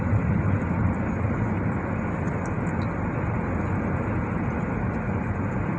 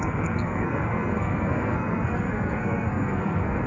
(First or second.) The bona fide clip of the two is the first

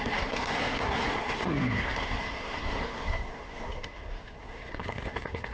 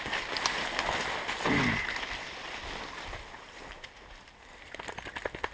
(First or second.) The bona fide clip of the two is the second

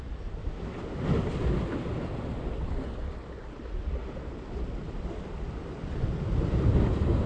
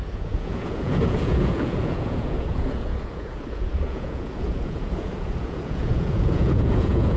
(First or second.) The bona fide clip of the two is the first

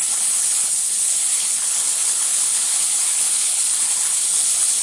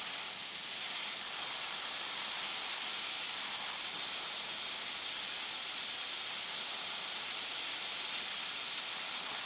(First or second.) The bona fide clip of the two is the second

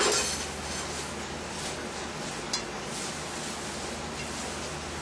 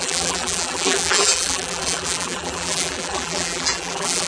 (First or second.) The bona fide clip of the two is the first